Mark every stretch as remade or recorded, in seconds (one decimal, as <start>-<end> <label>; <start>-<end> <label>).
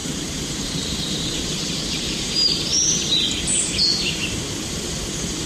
0.0-2.7 remade; 2.7-3.4 recorded; 3.4-5.5 remade